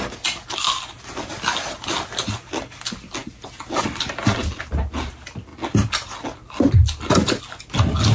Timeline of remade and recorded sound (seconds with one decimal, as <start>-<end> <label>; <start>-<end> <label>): 0.0-8.1 recorded